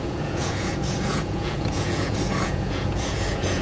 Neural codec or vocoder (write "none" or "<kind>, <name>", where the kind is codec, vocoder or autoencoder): vocoder, Vocos